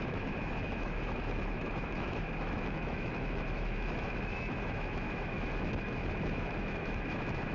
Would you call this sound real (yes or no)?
no